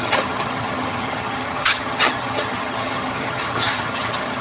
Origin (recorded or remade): remade